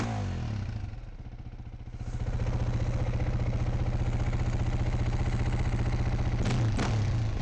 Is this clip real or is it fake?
real